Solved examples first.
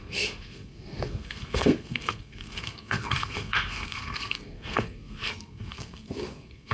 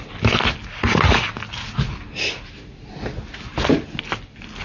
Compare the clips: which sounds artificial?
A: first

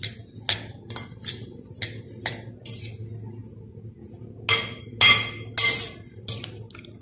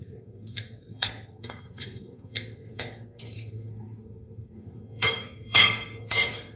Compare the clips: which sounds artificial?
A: second